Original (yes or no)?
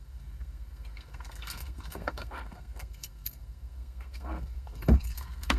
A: no